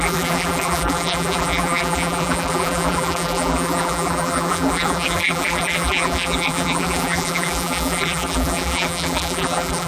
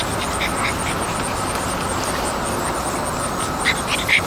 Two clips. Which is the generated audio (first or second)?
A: first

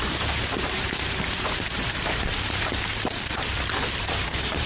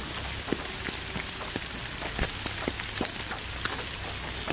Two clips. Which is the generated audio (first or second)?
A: first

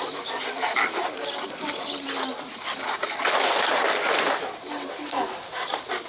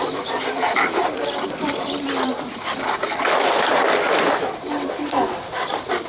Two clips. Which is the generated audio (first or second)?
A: second